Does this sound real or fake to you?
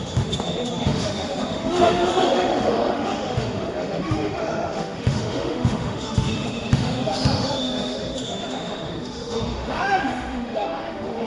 fake